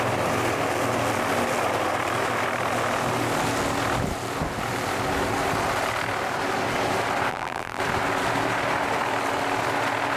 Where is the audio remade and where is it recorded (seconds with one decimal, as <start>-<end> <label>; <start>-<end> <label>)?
0.0-7.3 recorded; 7.3-7.8 remade; 7.8-10.2 recorded

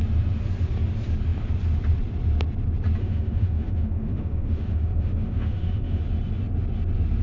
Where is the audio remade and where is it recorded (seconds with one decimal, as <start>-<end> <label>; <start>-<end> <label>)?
0.0-3.0 recorded; 3.0-6.0 remade; 6.0-7.2 recorded

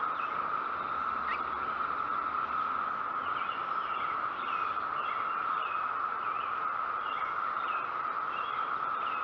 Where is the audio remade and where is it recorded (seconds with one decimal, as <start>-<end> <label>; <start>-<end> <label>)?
0.0-5.5 recorded; 5.5-7.1 remade; 7.1-9.2 recorded

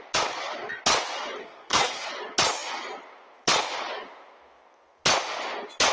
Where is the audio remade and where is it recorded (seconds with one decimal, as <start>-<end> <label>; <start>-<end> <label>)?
0.0-1.4 recorded; 1.4-2.1 remade; 2.1-5.9 recorded

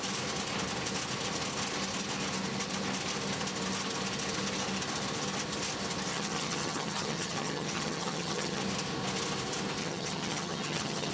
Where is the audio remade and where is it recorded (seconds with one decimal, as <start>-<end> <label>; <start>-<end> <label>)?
0.0-6.1 recorded; 6.1-8.6 remade; 8.6-9.8 recorded; 9.8-11.1 remade

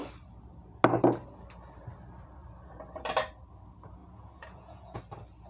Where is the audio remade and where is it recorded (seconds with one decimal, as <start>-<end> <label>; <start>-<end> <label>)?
0.0-4.0 recorded; 4.0-5.0 remade; 5.0-5.5 recorded